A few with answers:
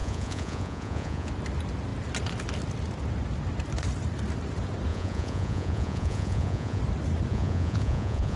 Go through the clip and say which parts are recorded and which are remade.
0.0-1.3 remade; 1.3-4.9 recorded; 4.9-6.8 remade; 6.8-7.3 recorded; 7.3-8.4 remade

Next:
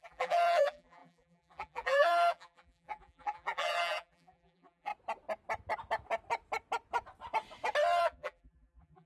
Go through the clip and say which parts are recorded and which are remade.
0.0-4.9 remade; 4.9-8.0 recorded; 8.0-9.1 remade

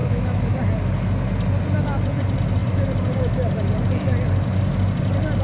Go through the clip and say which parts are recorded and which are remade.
0.0-0.5 remade; 0.5-5.4 recorded

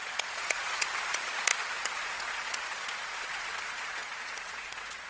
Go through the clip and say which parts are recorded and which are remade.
0.0-5.1 remade

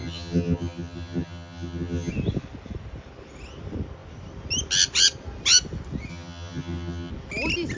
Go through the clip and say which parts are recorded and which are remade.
0.0-2.1 remade; 2.1-6.1 recorded; 6.1-7.1 remade; 7.1-7.8 recorded

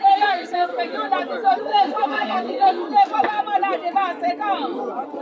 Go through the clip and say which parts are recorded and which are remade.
0.0-0.7 remade; 0.7-1.6 recorded; 1.6-2.8 remade; 2.8-5.2 recorded